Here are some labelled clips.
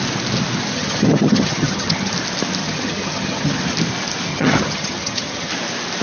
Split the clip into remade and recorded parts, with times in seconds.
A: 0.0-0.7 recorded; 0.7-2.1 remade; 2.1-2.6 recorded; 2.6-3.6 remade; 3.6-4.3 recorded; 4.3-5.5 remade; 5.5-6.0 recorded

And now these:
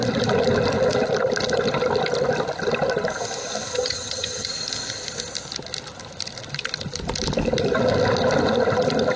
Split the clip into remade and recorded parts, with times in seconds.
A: 0.0-3.7 recorded; 3.7-4.5 remade; 4.5-9.2 recorded

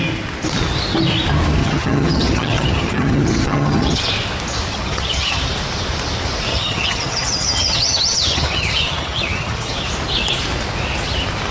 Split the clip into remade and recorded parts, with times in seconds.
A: 0.0-1.6 recorded; 1.6-4.0 remade; 4.0-4.7 recorded; 4.7-5.4 remade; 5.4-6.5 recorded; 6.5-9.9 remade; 9.9-11.5 recorded

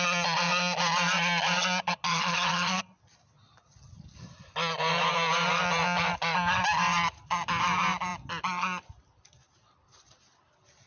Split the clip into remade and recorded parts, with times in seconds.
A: 0.0-2.1 recorded; 2.1-2.8 remade; 2.8-10.9 recorded

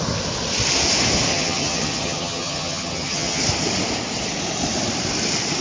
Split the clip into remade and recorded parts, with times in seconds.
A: 0.0-1.3 recorded; 1.3-3.4 remade; 3.4-5.6 recorded

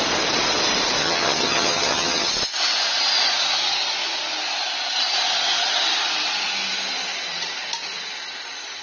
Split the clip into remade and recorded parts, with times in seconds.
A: 0.0-1.0 recorded; 1.0-2.3 remade; 2.3-8.8 recorded